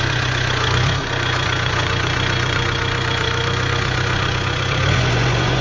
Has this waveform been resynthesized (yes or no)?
yes